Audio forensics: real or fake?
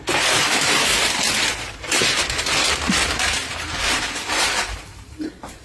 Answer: fake